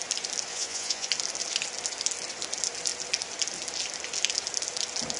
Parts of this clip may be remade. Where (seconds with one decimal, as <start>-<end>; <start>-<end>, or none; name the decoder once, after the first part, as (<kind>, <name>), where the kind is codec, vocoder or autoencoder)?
0.5-1.1 (vocoder, Vocos)